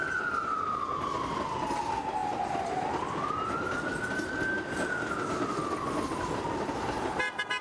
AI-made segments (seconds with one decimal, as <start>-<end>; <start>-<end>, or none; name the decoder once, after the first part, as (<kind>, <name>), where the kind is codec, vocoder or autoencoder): none